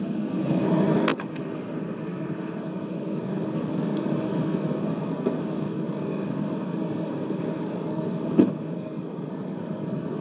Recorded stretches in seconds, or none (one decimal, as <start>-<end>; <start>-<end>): none